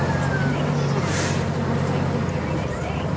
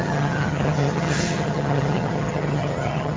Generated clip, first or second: second